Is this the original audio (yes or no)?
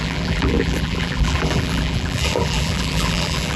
no